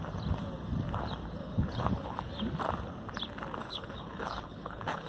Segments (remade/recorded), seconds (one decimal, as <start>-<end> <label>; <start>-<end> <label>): 0.0-1.4 recorded; 1.4-2.3 remade; 2.3-3.6 recorded; 3.6-5.1 remade